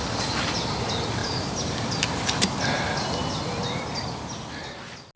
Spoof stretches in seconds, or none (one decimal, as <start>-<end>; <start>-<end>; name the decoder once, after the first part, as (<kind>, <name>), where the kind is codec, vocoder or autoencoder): 1.2-3.3 (vocoder, BigVGAN v2)